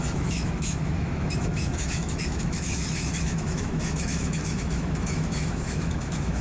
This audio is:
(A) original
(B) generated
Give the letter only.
B